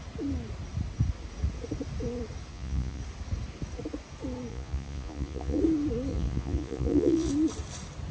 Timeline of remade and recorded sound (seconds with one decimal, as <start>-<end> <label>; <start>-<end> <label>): 0.0-2.5 recorded; 2.5-3.0 remade; 3.0-4.5 recorded; 4.5-5.6 remade; 5.6-6.1 recorded; 6.1-7.3 remade; 7.3-8.1 recorded